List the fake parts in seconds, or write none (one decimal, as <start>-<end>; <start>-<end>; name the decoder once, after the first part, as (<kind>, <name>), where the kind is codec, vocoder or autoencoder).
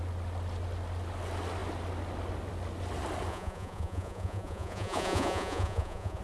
3.3-6.2 (vocoder, Vocos)